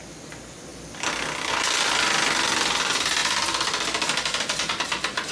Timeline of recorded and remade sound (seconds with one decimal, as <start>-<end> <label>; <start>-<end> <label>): 0.0-5.3 recorded